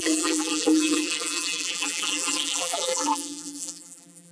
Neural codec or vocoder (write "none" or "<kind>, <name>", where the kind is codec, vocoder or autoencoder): vocoder, BigVGAN v2